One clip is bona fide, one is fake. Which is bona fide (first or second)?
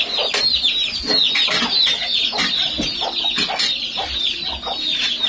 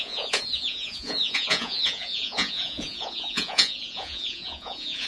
first